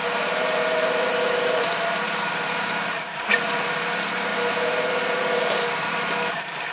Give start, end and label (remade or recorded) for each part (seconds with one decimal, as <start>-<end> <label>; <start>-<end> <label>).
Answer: 0.0-4.3 remade; 4.3-5.9 recorded; 5.9-6.7 remade